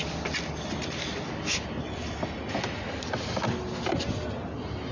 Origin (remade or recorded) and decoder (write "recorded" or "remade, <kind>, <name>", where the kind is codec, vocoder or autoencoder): recorded